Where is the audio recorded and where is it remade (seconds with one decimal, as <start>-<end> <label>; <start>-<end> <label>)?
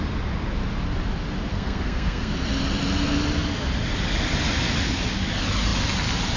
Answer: 0.0-1.5 recorded; 1.5-2.3 remade; 2.3-6.4 recorded